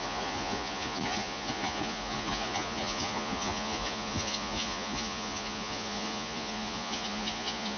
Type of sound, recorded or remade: remade